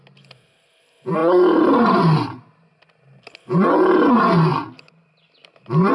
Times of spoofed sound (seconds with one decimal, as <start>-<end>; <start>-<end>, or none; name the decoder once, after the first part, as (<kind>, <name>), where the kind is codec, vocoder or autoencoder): none